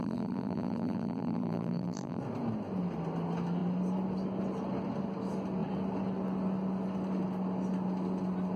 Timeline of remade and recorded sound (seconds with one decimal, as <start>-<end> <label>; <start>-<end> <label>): 0.0-2.2 remade; 2.2-8.6 recorded